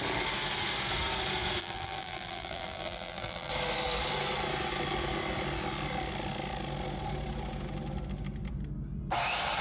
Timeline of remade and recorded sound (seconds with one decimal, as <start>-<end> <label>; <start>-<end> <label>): 0.0-1.6 recorded; 1.6-3.5 remade; 3.5-9.6 recorded